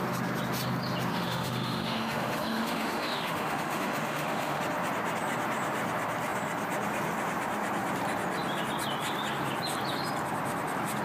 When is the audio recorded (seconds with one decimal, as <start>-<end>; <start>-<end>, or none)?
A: 0.0-1.1; 4.6-11.0